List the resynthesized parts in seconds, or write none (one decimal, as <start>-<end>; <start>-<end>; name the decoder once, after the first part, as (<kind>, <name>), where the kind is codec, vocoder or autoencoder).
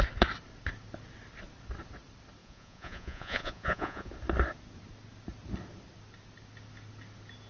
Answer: 2.4-4.1 (vocoder, Vocos)